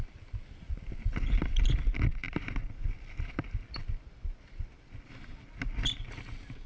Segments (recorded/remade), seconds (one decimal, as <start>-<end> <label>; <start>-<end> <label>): 0.0-6.7 recorded